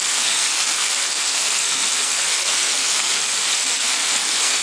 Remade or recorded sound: remade